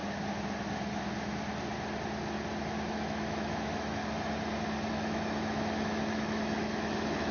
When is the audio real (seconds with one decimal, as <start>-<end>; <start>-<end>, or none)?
0.0-2.9; 4.0-4.9